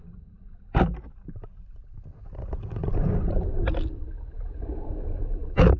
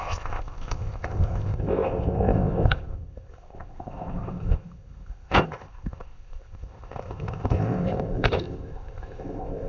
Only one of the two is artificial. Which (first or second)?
second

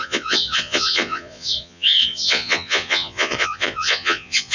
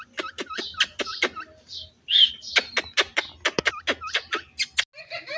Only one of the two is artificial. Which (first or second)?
first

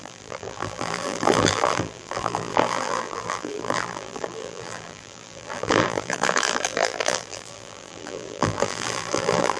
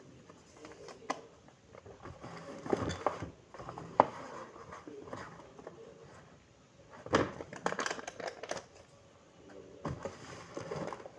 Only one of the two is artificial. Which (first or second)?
first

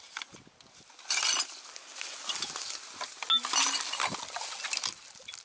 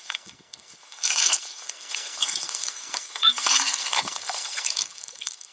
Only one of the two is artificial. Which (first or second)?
second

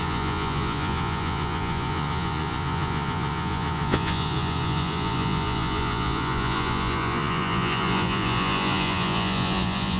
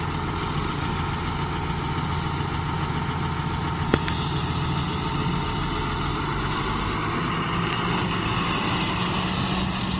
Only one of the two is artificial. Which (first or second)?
first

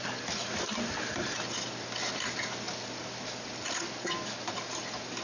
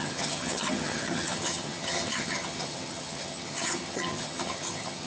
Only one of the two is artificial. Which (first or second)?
second